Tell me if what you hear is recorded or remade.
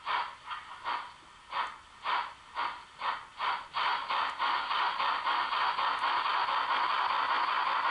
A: recorded